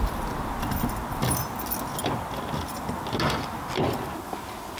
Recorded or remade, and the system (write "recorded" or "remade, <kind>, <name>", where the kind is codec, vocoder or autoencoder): recorded